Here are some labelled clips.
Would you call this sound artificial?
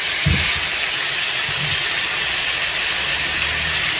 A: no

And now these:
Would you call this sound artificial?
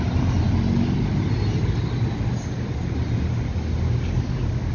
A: no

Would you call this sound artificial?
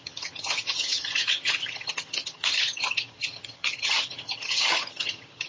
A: yes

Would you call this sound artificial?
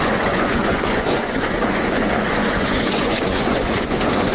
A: yes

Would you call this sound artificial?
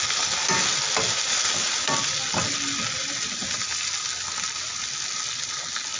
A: no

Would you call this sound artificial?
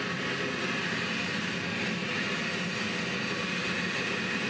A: no